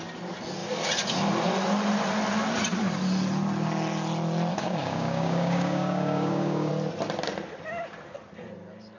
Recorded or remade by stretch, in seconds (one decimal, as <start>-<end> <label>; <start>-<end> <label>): 0.0-4.5 recorded; 4.5-6.7 remade; 6.7-9.0 recorded

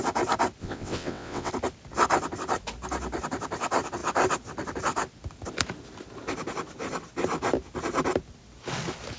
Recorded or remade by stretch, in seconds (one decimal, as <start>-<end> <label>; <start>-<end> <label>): 0.0-0.6 recorded; 0.6-1.5 remade; 1.5-9.2 recorded

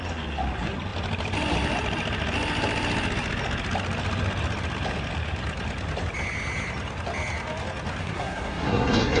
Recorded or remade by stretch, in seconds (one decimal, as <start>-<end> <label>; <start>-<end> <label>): 0.0-8.0 recorded; 8.0-9.2 remade

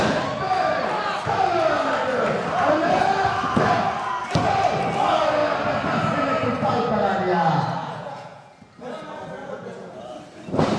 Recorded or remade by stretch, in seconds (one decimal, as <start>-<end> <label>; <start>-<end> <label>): 0.0-7.8 recorded; 7.8-8.6 remade; 8.6-9.4 recorded; 9.4-9.9 remade; 9.9-10.8 recorded

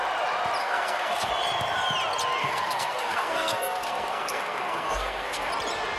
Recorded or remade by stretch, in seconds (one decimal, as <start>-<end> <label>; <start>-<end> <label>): 0.0-0.6 recorded; 0.6-1.3 remade; 1.3-2.4 recorded; 2.4-5.5 remade; 5.5-6.0 recorded

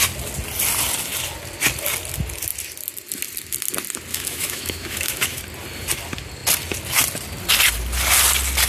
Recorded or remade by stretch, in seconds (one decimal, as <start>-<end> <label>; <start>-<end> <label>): 0.0-4.1 recorded; 4.1-5.4 remade; 5.4-8.7 recorded